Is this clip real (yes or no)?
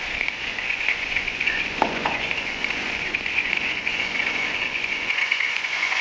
no